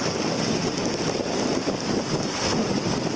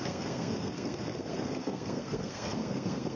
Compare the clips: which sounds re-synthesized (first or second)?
second